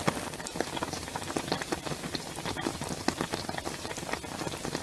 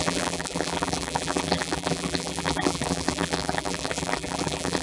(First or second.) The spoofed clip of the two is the second